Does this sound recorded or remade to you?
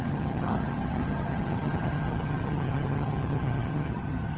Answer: remade